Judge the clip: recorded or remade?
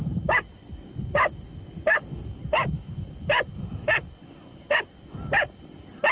recorded